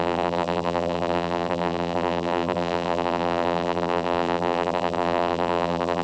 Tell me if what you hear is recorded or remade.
remade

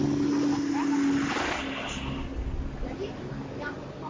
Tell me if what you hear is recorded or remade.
recorded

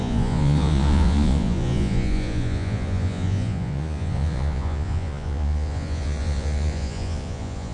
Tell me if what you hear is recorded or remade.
remade